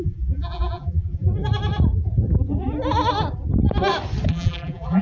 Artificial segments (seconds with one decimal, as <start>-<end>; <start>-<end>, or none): 0.0-1.3; 4.3-5.0